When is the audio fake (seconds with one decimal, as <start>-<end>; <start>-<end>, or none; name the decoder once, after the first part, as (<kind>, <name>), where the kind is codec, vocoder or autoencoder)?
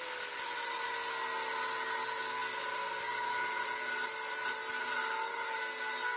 none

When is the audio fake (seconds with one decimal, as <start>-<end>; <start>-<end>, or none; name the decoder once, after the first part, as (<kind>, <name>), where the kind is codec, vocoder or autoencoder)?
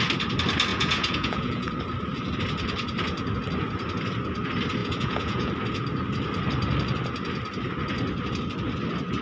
0.7-1.7 (vocoder, Vocos); 4.8-5.5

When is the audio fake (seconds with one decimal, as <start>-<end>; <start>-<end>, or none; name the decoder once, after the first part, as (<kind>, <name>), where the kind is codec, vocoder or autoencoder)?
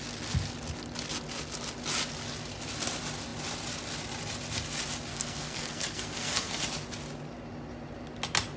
5.1-6.6 (codec, SNAC)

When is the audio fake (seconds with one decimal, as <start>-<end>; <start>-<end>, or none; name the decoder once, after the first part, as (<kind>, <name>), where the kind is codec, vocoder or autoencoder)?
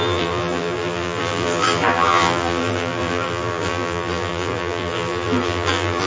0.0-6.1 (vocoder, BigVGAN v2)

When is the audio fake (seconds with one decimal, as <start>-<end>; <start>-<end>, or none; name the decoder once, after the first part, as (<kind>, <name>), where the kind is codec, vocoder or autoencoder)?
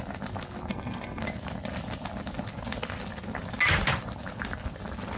0.7-1.2 (codec, SNAC)